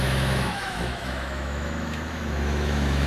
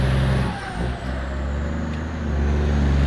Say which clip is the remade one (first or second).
first